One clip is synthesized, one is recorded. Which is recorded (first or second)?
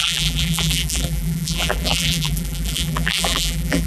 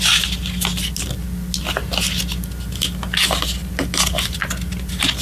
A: second